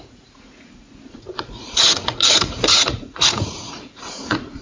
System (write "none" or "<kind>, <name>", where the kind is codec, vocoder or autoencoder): vocoder, Vocos